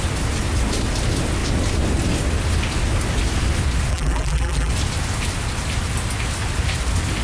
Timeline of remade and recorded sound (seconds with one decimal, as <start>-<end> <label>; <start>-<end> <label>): 0.0-3.9 recorded; 3.9-4.7 remade; 4.7-7.2 recorded